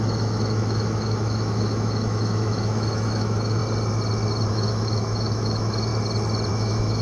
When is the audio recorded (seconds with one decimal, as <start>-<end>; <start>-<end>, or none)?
3.6-4.5; 5.9-6.5